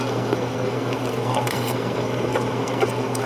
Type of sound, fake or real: fake